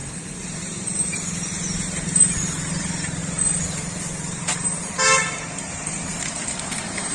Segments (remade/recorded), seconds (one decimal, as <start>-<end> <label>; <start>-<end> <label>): 0.0-7.1 remade